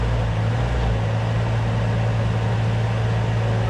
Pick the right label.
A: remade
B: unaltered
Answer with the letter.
B